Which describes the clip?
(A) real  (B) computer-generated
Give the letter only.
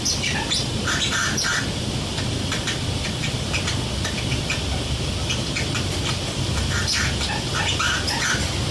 A